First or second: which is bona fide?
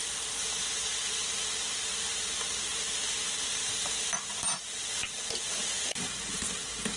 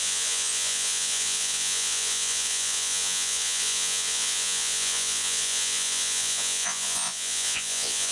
first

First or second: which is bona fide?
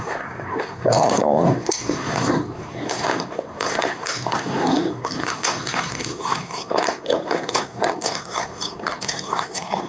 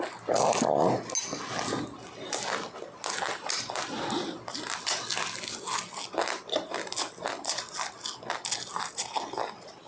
second